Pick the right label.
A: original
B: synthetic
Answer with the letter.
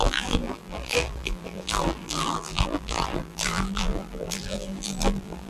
B